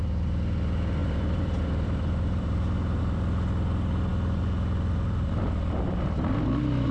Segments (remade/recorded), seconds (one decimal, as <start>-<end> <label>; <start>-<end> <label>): 0.0-1.0 recorded; 1.0-3.0 remade; 3.0-6.9 recorded